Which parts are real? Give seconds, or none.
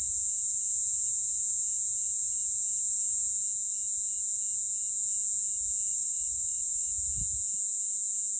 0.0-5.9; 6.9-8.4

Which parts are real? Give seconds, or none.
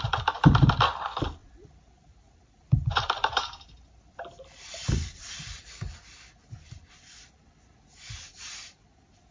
0.0-1.4; 6.0-9.3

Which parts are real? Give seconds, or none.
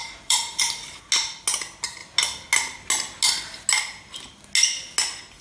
0.6-5.4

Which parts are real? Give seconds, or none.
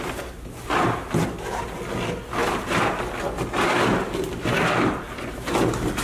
0.0-2.4; 3.0-6.0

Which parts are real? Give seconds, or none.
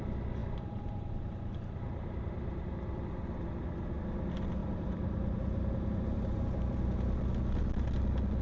0.0-0.4; 4.0-4.6; 6.6-8.4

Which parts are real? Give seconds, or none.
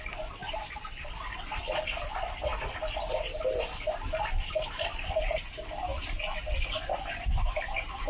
0.4-1.0; 5.9-6.9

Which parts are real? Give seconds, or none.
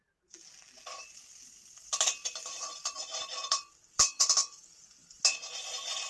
0.0-0.9; 4.6-6.1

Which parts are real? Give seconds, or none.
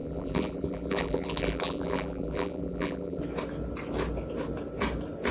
3.2-5.3